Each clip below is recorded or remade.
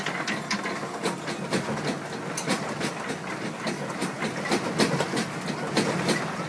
recorded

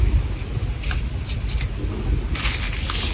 recorded